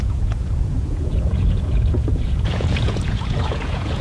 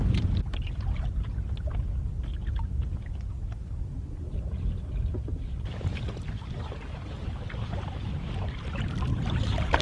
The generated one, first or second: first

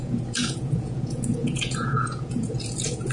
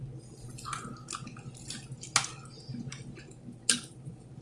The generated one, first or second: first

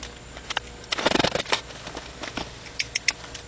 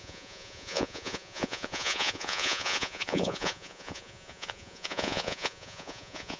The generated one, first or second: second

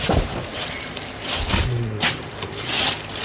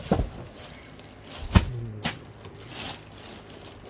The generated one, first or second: first